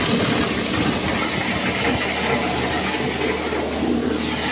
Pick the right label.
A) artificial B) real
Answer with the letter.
B